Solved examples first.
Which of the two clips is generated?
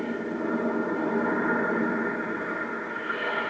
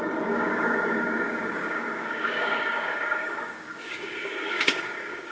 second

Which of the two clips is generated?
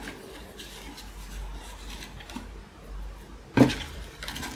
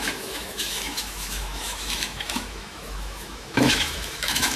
second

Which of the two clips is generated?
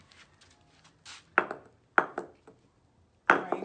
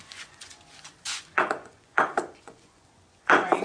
second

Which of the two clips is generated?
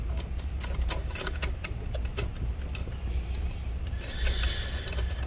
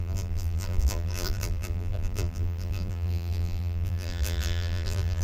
second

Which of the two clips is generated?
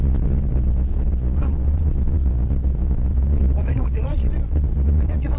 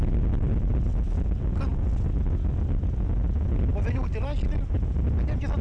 first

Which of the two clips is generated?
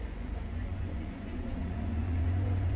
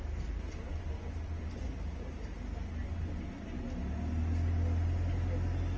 first